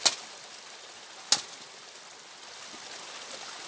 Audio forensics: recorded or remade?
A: recorded